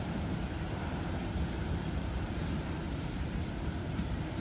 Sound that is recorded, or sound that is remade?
remade